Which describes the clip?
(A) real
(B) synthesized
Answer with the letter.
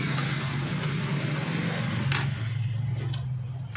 A